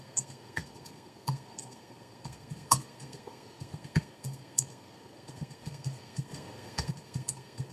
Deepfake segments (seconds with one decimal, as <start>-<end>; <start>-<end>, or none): 0.0-7.7